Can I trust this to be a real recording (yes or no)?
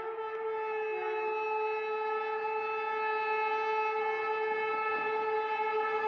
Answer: yes